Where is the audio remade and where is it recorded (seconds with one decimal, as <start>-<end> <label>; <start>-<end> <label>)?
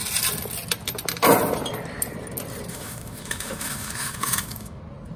0.0-2.7 recorded; 2.7-4.8 remade; 4.8-5.2 recorded